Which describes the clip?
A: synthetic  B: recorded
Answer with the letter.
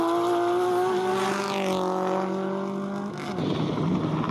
B